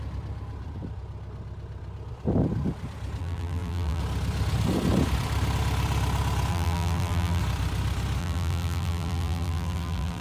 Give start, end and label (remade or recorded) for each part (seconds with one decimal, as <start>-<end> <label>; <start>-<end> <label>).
0.0-3.2 recorded; 3.2-4.0 remade; 4.0-6.5 recorded; 6.5-7.4 remade; 7.4-8.2 recorded; 8.2-10.2 remade